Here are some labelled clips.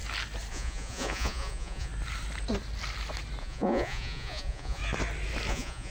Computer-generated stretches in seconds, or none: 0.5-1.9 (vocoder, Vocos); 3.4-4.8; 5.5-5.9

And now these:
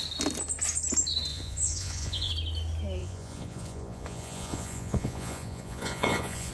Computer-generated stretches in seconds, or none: 1.3-2.3 (vocoder, Vocos); 3.0-6.5